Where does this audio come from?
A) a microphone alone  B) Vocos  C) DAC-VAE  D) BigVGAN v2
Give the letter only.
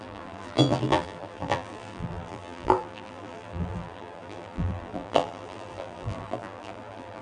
D